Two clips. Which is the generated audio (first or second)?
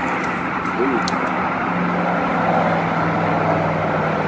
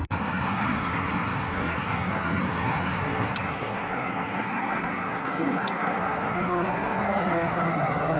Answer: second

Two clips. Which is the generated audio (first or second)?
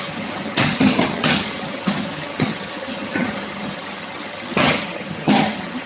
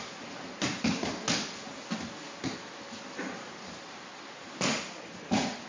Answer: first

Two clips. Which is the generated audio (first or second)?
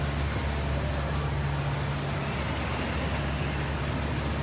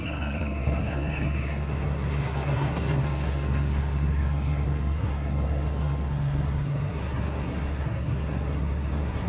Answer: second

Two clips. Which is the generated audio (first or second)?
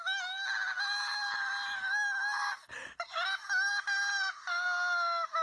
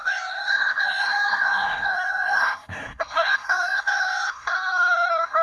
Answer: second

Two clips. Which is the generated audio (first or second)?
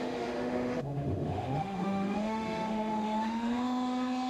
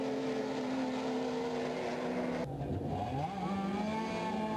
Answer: first